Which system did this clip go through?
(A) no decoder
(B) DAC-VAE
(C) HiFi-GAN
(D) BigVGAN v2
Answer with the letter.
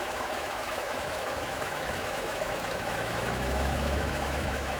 B